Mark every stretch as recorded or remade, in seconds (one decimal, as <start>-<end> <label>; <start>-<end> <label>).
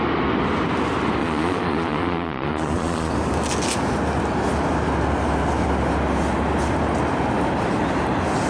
0.0-1.2 recorded; 1.2-3.1 remade; 3.1-8.5 recorded